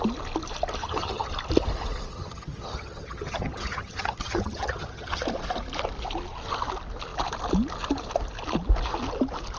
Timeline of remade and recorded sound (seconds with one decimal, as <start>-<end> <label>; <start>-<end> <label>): 0.0-0.8 recorded; 0.8-1.3 remade; 1.3-2.1 recorded; 2.1-5.2 remade; 5.2-9.6 recorded